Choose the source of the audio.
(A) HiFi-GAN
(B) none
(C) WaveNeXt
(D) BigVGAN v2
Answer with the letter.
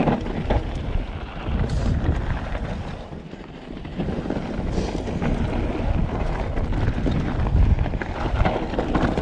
B